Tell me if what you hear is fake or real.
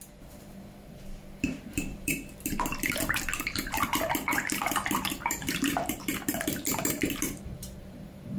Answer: fake